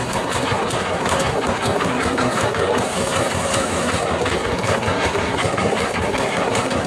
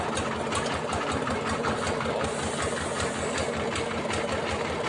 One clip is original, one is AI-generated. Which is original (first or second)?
second